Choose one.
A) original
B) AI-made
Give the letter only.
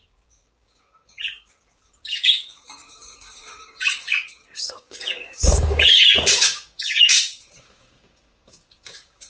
B